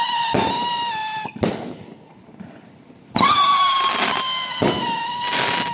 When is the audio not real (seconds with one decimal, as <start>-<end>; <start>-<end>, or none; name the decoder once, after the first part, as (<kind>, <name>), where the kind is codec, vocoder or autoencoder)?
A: none